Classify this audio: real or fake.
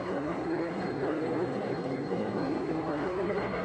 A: fake